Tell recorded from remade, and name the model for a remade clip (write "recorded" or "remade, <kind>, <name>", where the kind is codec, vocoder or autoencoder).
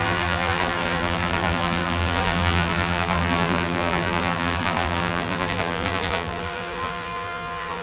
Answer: remade, vocoder, BigVGAN v2